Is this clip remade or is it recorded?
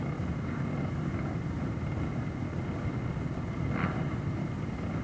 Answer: recorded